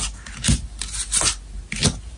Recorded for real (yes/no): yes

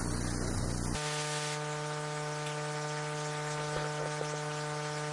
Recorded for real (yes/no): yes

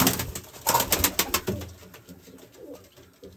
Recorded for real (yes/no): yes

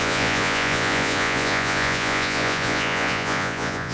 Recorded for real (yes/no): no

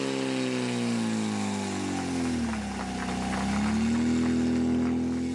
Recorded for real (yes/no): yes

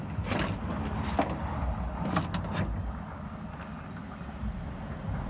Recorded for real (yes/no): yes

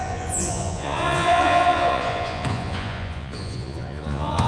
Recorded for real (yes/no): no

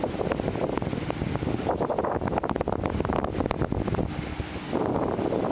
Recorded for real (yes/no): yes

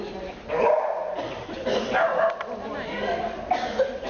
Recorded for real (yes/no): yes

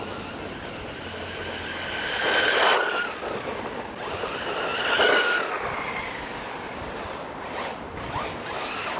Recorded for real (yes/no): yes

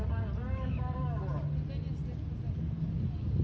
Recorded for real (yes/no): yes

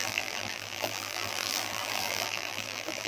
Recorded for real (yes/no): no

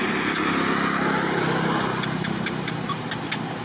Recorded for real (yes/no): yes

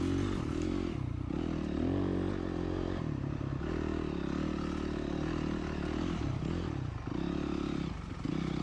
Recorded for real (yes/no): yes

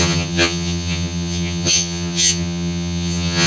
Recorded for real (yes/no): no